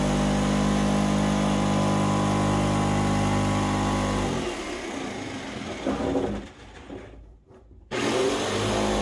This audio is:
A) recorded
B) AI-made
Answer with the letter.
A